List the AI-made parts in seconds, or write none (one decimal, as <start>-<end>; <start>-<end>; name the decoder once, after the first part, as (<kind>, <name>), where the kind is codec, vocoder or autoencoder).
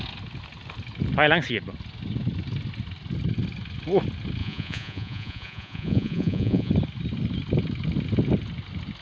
4.4-6.7 (vocoder, Vocos)